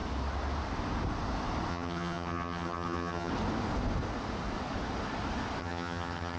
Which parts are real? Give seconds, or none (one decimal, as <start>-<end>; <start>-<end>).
0.0-1.7; 3.3-5.6